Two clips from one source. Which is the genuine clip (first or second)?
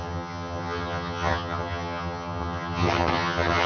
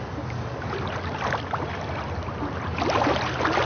second